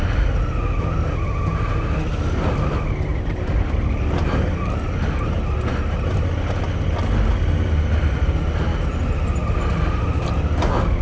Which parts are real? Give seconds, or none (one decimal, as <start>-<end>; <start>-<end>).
0.0-3.1; 3.8-11.0